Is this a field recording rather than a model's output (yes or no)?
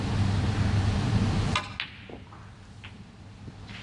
yes